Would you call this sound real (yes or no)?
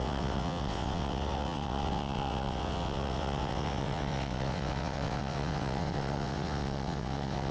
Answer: no